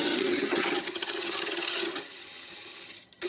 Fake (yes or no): yes